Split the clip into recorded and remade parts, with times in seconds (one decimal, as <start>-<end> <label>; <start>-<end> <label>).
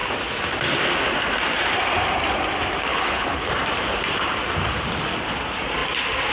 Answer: 0.0-2.9 recorded; 2.9-3.5 remade; 3.5-6.3 recorded